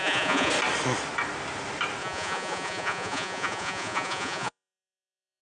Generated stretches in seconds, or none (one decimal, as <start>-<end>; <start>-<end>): 0.0-0.5; 2.0-5.4